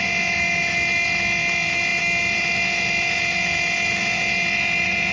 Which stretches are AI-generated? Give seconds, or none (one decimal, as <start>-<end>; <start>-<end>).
none